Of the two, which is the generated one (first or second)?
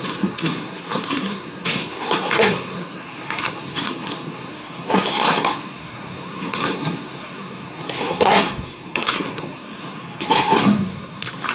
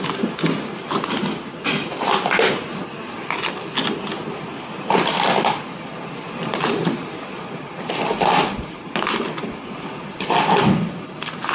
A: first